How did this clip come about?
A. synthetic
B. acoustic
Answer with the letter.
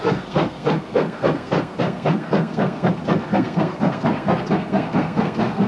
A